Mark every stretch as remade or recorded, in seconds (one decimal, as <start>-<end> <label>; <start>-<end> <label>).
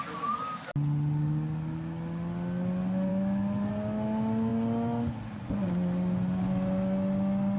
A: 0.0-3.1 recorded; 3.1-3.7 remade; 3.7-7.6 recorded